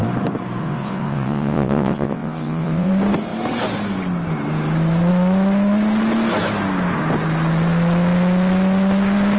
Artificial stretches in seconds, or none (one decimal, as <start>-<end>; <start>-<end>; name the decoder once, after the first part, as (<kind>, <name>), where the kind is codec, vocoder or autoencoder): 0.6-2.9 (vocoder, WaveNeXt)